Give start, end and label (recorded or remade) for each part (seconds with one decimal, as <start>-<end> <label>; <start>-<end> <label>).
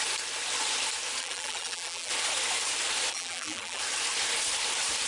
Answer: 0.0-1.2 recorded; 1.2-2.1 remade; 2.1-3.1 recorded; 3.1-3.8 remade; 3.8-5.1 recorded